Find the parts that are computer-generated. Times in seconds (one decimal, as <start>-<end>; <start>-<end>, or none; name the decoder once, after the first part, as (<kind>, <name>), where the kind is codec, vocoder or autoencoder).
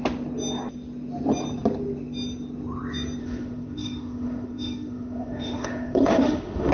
3.2-6.7 (autoencoder, DAC-VAE)